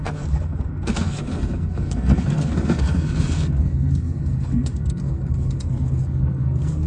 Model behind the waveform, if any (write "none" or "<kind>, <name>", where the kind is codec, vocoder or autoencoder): codec, SNAC